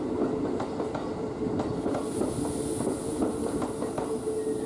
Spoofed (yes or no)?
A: no